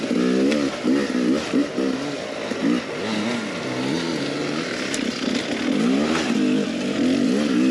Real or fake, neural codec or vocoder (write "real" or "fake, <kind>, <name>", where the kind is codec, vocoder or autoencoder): real